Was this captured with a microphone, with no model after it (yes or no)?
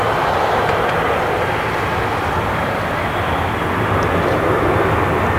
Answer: yes